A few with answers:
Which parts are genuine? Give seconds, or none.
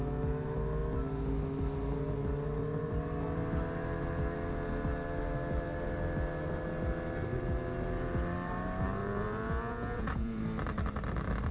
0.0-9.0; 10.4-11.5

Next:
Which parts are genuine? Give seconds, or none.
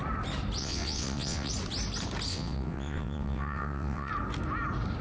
0.0-0.6; 1.5-2.3; 4.1-5.0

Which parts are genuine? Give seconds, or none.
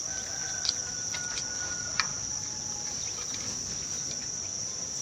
0.0-5.0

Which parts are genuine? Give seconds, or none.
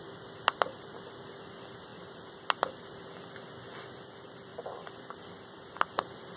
0.0-6.4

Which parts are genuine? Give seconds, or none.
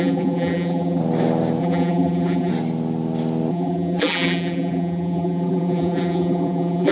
1.0-1.6; 2.5-3.5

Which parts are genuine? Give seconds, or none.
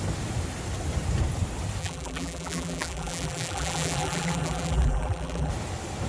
0.0-1.8; 5.5-6.1